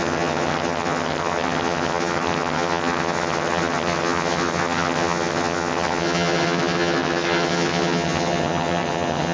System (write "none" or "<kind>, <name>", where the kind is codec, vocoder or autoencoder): vocoder, HiFi-GAN